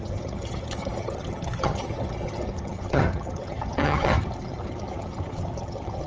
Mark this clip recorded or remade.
remade